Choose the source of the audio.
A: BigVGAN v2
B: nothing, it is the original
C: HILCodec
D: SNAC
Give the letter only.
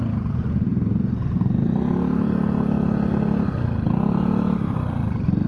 B